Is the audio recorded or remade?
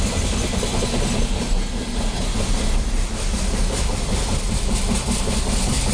recorded